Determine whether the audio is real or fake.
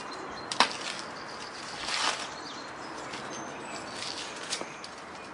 real